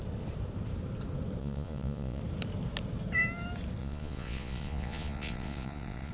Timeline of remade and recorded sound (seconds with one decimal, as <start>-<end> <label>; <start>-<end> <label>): 0.0-1.4 recorded; 1.4-2.2 remade; 2.2-3.8 recorded; 3.8-6.1 remade